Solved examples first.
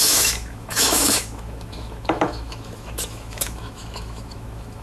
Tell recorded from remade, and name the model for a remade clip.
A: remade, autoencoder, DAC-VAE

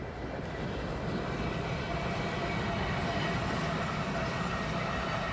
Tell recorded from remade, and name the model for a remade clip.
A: recorded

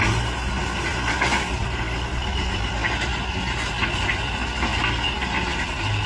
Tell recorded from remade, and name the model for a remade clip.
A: recorded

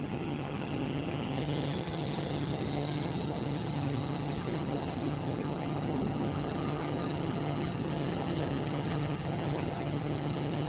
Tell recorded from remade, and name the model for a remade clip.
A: remade, vocoder, HiFi-GAN